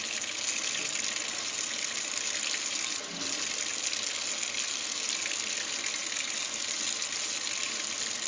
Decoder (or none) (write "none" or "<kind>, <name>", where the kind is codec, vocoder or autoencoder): none